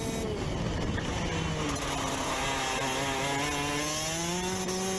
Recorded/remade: recorded